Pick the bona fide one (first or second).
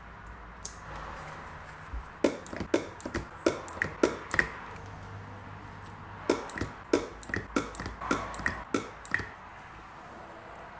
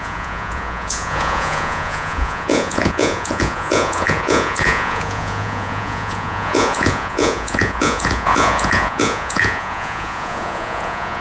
first